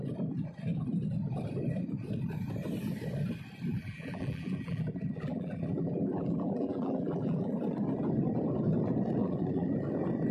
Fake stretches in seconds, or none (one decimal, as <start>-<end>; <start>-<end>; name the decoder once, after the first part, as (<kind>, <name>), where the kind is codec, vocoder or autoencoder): 3.7-7.5 (vocoder, BigVGAN v2); 9.2-9.7